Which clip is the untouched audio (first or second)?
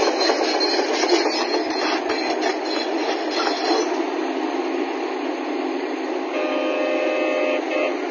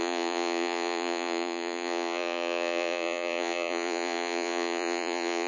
first